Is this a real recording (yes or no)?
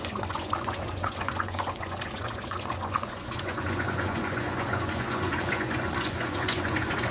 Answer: no